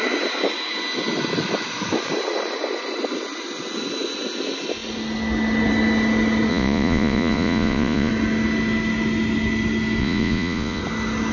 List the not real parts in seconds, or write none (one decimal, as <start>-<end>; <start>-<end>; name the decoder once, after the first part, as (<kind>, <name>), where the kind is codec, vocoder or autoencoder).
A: 6.5-8.1 (vocoder, Vocos); 10.0-10.8